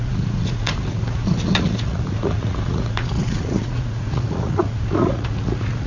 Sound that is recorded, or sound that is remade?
remade